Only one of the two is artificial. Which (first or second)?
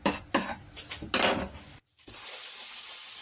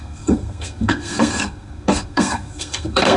second